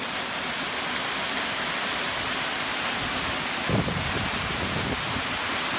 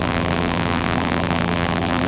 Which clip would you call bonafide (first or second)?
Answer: first